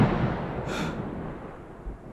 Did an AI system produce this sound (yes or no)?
no